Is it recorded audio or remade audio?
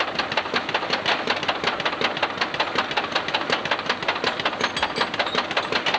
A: recorded